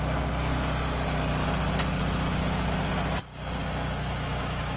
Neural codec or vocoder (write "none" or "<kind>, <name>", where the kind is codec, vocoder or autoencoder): none